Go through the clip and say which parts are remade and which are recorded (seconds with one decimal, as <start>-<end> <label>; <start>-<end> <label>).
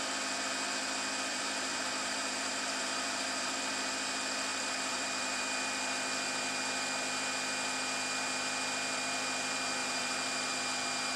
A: 0.0-1.3 recorded; 1.3-3.6 remade; 3.6-4.5 recorded; 4.5-5.4 remade; 5.4-9.8 recorded; 9.8-10.5 remade; 10.5-11.2 recorded